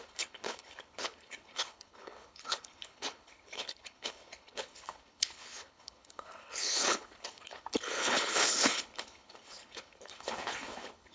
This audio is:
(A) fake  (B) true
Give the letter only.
A